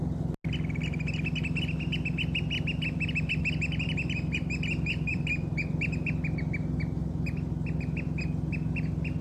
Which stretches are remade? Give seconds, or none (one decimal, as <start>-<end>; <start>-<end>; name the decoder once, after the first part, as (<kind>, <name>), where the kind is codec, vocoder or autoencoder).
5.1-5.7 (vocoder, BigVGAN v2)